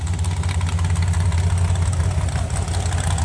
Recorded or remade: recorded